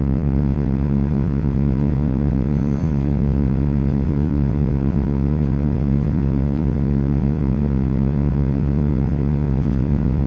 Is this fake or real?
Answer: fake